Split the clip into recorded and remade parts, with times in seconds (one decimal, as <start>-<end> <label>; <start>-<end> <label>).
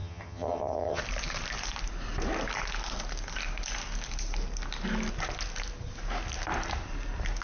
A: 0.0-1.0 remade; 1.0-7.4 recorded